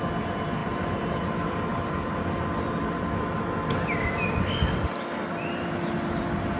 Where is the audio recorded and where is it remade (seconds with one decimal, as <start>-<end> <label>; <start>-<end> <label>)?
0.0-0.6 recorded; 0.6-1.2 remade; 1.2-1.7 recorded; 1.7-2.9 remade; 2.9-6.6 recorded

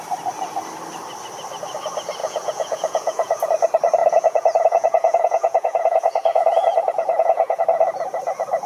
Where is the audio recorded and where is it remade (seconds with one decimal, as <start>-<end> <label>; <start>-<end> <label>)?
0.0-2.2 recorded; 2.2-3.5 remade; 3.5-4.0 recorded; 4.0-7.6 remade; 7.6-8.7 recorded

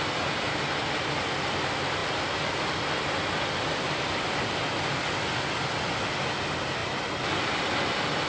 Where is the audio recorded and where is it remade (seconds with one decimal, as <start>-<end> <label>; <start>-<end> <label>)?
0.0-8.3 recorded